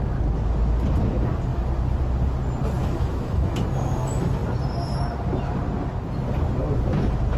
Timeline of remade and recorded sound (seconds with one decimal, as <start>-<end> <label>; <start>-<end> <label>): 0.0-2.8 recorded; 2.8-3.6 remade; 3.6-7.4 recorded